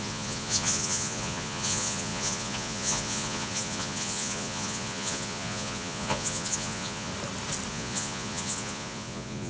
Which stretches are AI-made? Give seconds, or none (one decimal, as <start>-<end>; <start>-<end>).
0.0-7.1; 7.7-9.5